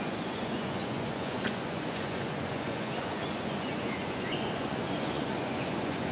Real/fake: fake